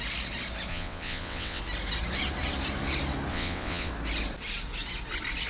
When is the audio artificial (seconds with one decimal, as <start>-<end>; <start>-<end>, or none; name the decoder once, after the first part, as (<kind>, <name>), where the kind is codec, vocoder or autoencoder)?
0.7-1.6 (vocoder, WaveNeXt); 3.3-3.9